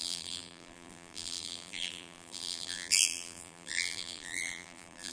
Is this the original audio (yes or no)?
no